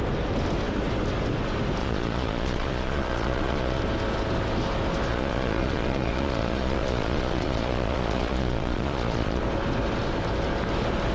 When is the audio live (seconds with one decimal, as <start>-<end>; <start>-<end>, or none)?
0.0-1.8; 3.8-5.1; 9.4-11.1